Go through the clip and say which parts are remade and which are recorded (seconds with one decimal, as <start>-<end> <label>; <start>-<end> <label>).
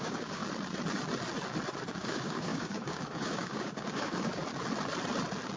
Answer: 0.0-0.4 remade; 0.4-1.9 recorded; 1.9-4.4 remade; 4.4-5.6 recorded